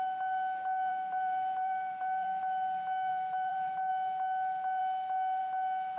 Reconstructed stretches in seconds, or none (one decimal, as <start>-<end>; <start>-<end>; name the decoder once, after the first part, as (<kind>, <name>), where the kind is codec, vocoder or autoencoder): 0.9-2.4 (vocoder, BigVGAN v2); 3.1-3.9

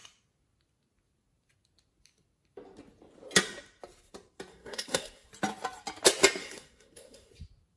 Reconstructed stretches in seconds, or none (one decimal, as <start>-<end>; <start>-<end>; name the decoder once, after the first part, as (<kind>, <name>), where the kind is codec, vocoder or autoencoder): 4.5-5.3 (codec, SNAC); 6.4-7.3